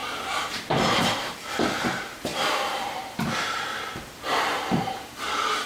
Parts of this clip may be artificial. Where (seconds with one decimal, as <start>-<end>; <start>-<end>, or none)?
0.0-2.3; 2.8-5.7